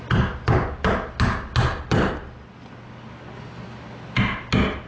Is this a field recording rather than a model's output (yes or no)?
yes